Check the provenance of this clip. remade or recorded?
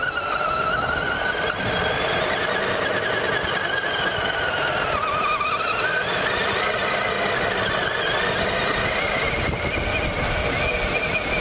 recorded